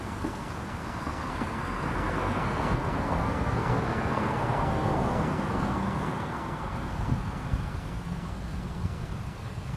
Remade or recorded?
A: remade